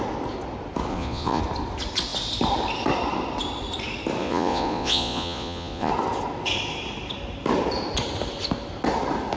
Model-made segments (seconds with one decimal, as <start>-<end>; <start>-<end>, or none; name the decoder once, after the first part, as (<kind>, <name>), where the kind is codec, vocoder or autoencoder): 0.9-1.4 (vocoder, Vocos); 4.2-5.9